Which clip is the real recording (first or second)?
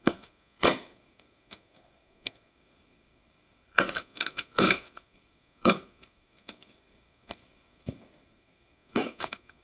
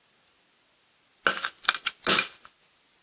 second